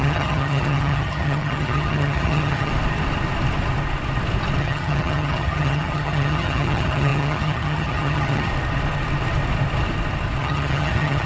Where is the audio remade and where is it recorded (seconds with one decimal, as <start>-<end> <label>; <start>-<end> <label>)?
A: 0.0-2.7 remade; 2.7-4.6 recorded; 4.6-8.5 remade; 8.5-10.4 recorded; 10.4-11.3 remade